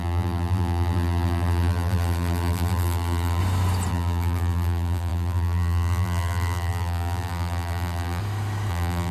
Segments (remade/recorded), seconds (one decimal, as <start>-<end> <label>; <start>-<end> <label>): 0.0-3.4 remade; 3.4-3.9 recorded; 3.9-8.2 remade; 8.2-8.7 recorded; 8.7-9.1 remade